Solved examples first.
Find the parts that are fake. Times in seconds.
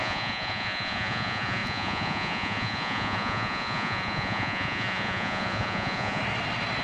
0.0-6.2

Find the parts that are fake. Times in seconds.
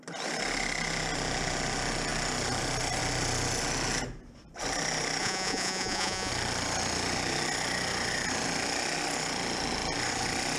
5.2-6.3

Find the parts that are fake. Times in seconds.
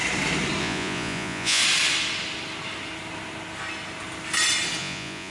0.6-1.6; 4.8-5.3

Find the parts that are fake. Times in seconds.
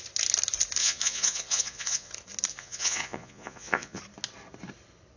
0.8-2.1; 2.5-4.0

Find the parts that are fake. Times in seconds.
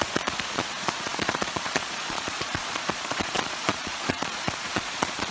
0.0-5.3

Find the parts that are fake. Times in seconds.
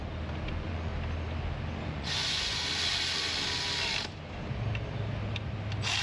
0.5-0.9; 1.8-2.6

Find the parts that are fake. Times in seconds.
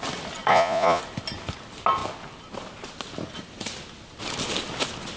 0.5-1.0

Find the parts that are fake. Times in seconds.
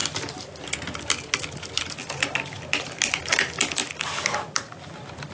none